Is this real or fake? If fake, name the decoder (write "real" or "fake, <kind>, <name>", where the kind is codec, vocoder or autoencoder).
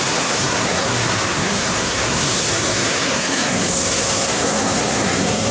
fake, codec, SNAC